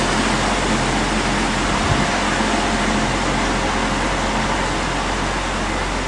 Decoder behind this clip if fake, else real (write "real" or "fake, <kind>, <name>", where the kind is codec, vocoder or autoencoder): real